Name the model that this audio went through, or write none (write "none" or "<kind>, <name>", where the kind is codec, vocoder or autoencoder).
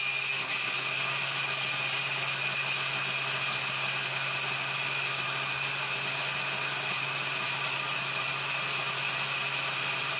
none